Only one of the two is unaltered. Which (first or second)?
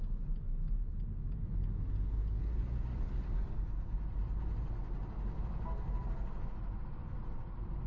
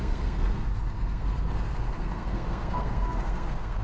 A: first